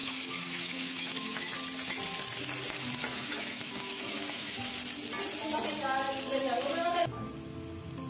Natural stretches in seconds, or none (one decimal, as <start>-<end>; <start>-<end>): 1.5-3.1; 4.7-8.1